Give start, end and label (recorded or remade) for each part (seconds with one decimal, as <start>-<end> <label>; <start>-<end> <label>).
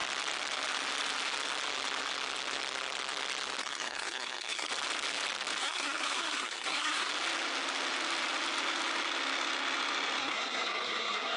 0.0-3.6 recorded; 3.6-4.7 remade; 4.7-5.6 recorded; 5.6-7.1 remade; 7.1-10.2 recorded; 10.2-11.4 remade